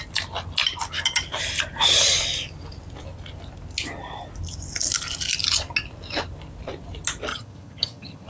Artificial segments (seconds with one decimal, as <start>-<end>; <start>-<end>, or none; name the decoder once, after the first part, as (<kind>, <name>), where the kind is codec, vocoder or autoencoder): 7.3-8.3 (vocoder, HiFi-GAN)